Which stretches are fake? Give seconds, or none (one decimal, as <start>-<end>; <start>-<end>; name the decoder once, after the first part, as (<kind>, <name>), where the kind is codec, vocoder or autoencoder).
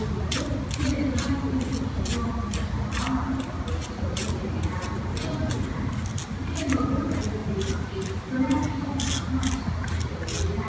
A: none